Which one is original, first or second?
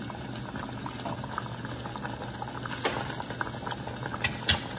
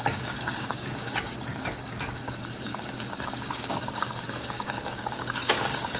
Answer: first